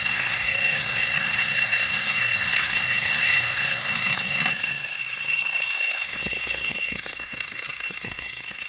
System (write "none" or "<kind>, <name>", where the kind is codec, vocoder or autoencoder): codec, SNAC